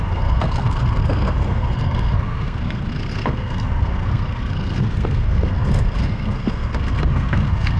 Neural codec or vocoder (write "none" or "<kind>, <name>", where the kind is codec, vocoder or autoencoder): codec, SNAC